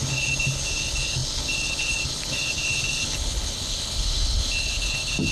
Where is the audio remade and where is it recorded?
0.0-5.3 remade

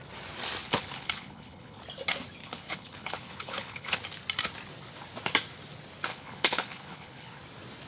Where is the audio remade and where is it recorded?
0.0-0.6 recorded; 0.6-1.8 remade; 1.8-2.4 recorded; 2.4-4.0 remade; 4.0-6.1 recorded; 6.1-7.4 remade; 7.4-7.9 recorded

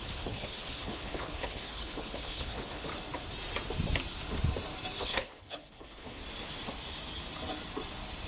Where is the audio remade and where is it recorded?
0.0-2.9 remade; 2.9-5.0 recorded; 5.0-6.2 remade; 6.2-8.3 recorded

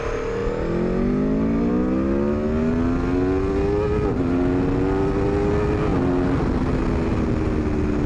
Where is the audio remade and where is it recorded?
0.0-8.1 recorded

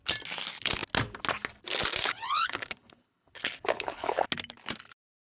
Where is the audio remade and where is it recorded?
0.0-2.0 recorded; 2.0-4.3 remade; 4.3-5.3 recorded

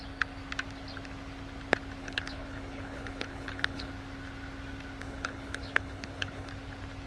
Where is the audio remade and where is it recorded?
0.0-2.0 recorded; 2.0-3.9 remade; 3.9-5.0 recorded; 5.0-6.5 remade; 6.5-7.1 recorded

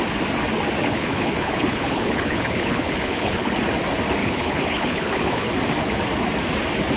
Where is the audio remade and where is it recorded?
0.0-0.8 recorded; 0.8-3.5 remade; 3.5-4.2 recorded; 4.2-5.5 remade; 5.5-7.0 recorded